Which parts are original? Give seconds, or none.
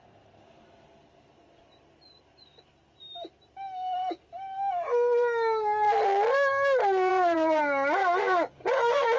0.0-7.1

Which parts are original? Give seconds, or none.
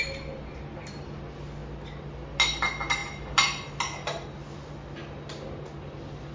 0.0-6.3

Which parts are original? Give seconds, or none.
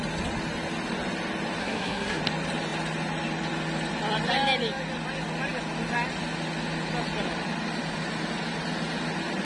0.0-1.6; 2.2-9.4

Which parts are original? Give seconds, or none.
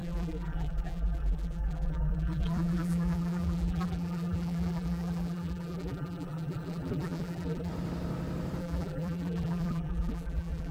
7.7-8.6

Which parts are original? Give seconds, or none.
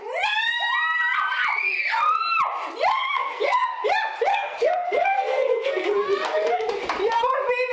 0.0-2.9; 3.8-4.3; 6.7-7.7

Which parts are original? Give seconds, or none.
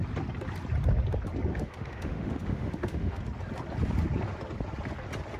0.0-1.5; 3.2-5.4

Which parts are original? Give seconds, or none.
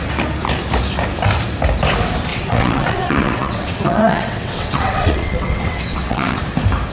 0.0-2.3; 6.4-6.9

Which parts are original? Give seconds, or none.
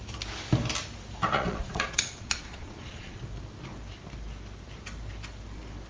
0.0-1.3; 3.2-5.9